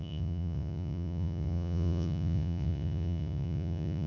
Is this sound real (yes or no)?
no